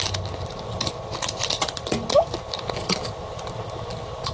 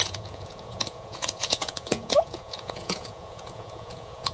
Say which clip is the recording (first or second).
first